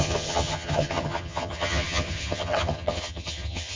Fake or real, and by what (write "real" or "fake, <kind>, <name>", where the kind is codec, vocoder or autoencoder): fake, vocoder, HiFi-GAN